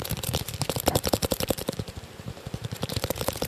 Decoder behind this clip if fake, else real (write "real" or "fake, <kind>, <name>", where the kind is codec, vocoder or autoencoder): fake, vocoder, BigVGAN v2